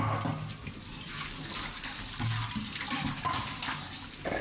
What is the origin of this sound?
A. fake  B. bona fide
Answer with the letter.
B